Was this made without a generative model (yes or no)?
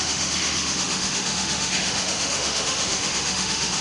no